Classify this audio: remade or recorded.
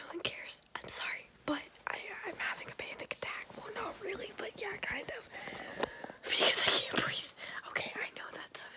recorded